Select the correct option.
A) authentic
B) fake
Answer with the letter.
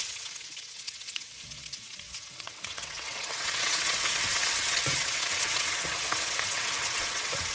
B